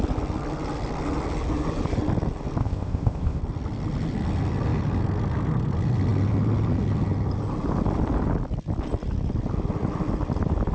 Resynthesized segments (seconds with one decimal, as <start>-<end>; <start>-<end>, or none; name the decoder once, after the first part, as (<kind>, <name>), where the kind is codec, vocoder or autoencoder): 2.6-3.4 (codec, ZipCodec)